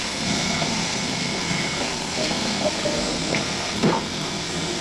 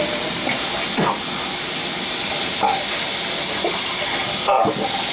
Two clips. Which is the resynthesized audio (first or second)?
first